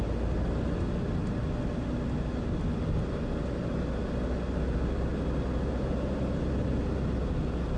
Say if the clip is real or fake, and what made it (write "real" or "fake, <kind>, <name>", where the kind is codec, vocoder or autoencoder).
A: real